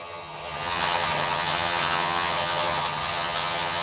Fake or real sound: fake